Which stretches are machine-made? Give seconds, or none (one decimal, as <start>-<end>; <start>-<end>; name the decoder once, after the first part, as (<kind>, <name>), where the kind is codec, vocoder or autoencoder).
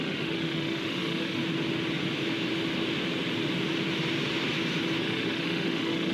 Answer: 0.0-1.4 (autoencoder, DAC-VAE); 5.0-6.1